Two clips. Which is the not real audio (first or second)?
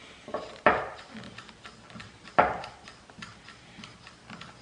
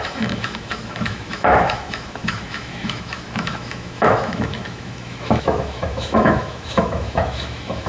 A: second